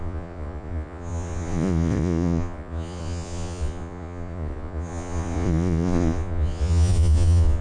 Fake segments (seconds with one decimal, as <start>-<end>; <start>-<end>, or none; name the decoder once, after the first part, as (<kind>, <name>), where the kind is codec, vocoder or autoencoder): 0.0-7.6 (vocoder, Vocos)